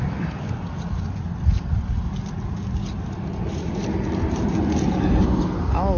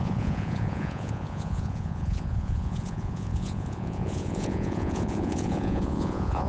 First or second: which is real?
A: first